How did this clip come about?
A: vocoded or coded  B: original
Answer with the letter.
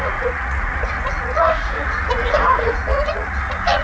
A